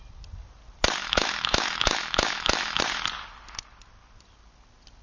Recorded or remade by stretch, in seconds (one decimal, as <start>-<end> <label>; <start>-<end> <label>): 0.0-1.0 recorded; 1.0-2.8 remade; 2.8-5.0 recorded